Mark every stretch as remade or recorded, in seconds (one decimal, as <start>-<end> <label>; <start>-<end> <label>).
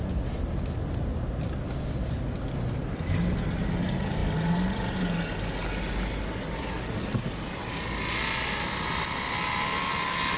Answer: 0.0-10.4 recorded